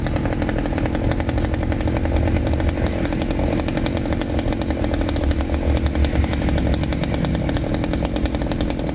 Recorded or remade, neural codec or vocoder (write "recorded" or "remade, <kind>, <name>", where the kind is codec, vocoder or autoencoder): recorded